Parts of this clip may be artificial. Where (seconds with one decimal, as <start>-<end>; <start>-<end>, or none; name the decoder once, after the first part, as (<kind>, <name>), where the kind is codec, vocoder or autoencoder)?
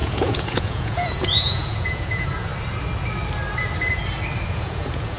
0.0-2.5 (vocoder, Vocos); 4.5-5.2